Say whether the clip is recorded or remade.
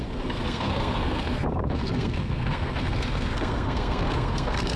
remade